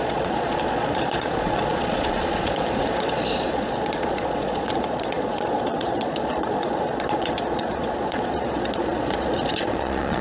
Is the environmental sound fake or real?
fake